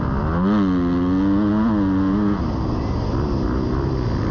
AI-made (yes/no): no